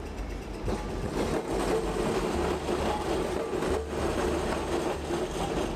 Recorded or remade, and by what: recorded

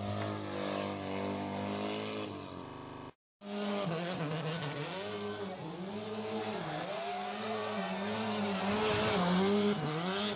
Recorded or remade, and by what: recorded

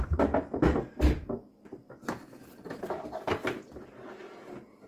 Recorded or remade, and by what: recorded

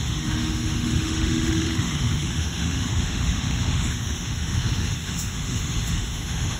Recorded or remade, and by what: remade, autoencoder, DAC-VAE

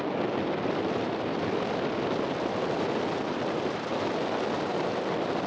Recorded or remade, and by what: recorded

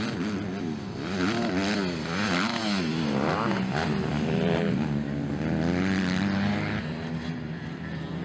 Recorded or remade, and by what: recorded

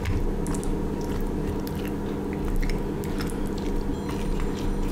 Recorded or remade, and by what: recorded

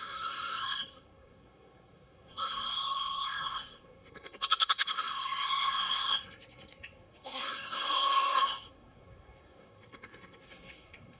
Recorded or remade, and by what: remade, codec, SNAC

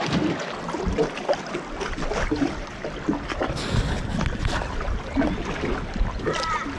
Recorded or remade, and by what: recorded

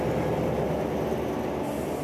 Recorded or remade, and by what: recorded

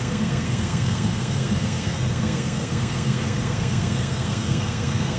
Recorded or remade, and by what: remade, codec, SNAC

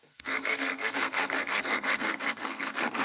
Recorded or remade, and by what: remade, codec, SNAC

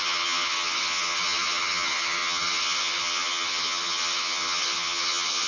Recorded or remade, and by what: remade, vocoder, HiFi-GAN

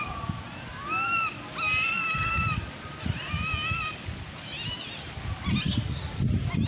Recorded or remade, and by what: recorded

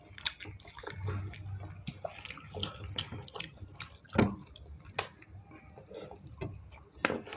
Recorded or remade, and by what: recorded